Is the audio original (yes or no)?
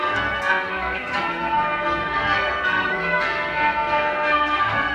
no